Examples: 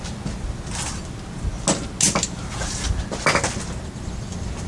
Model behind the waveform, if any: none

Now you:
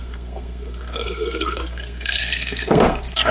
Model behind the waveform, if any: codec, SNAC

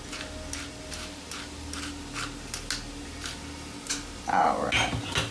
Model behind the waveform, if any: none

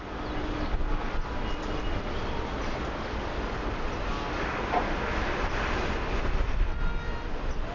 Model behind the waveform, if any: none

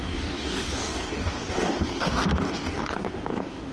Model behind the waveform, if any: codec, DAC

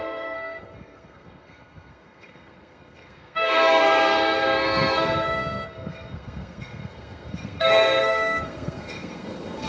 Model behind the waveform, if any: codec, SNAC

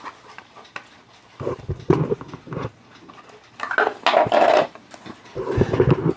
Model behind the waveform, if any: none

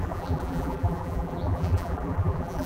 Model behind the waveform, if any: vocoder, BigVGAN v2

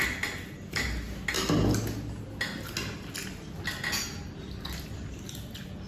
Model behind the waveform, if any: none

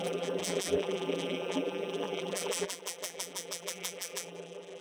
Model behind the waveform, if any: vocoder, BigVGAN v2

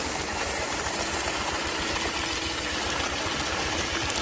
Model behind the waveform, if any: none